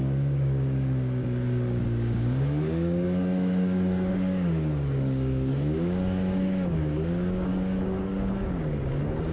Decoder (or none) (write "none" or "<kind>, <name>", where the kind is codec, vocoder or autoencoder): codec, DAC